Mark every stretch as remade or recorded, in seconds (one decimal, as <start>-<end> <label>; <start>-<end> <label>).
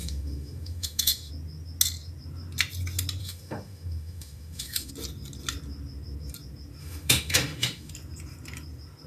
0.0-1.3 remade; 1.3-3.2 recorded; 3.2-4.9 remade; 4.9-6.8 recorded; 6.8-7.9 remade; 7.9-9.1 recorded